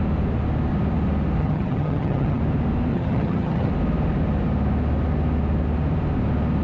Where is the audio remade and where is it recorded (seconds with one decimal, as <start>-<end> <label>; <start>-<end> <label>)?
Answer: 0.0-1.4 recorded; 1.4-2.4 remade; 2.4-2.9 recorded; 2.9-3.7 remade; 3.7-6.6 recorded